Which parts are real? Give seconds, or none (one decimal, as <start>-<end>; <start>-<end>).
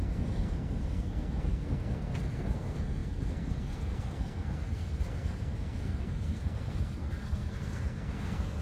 none